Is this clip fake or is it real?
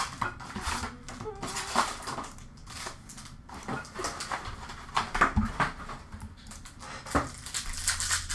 real